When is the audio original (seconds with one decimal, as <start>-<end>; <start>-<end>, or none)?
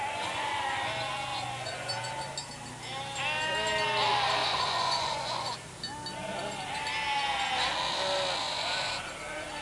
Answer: 0.6-1.3; 1.9-4.4; 5.7-8.4; 9.1-9.6